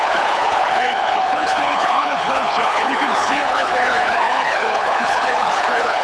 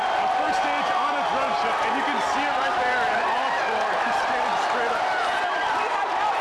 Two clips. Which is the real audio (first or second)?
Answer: second